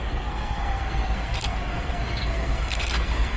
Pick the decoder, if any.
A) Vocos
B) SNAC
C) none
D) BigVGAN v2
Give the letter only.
B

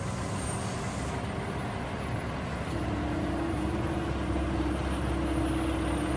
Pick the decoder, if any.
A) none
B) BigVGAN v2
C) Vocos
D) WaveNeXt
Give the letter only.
A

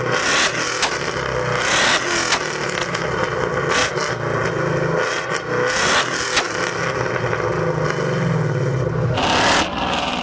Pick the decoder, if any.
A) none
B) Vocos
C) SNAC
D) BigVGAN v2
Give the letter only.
A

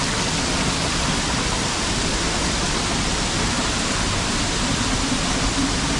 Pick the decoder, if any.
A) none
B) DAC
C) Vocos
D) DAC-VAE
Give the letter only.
A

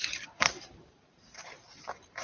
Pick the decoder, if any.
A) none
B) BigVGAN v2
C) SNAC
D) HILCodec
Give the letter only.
B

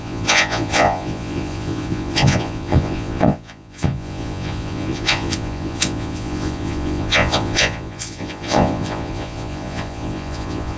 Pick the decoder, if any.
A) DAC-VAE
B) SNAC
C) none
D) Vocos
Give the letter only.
D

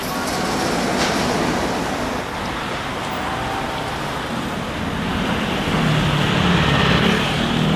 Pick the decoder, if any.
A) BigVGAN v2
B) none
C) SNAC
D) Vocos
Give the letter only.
B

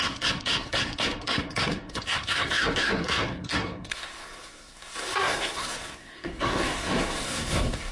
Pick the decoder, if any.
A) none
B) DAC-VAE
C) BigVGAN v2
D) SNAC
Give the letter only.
D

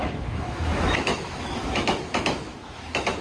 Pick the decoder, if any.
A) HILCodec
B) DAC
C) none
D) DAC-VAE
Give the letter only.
D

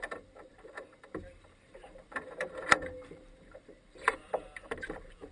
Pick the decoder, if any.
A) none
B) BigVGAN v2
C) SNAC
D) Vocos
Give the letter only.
B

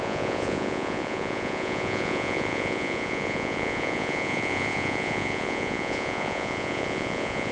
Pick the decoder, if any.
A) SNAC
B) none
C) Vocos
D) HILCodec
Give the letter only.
C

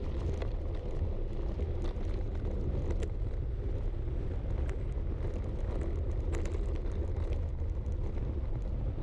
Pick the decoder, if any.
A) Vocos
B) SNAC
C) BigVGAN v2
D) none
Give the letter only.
D